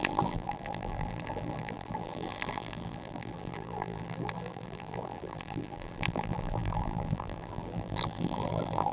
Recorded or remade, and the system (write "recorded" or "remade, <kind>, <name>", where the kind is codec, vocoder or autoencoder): remade, vocoder, BigVGAN v2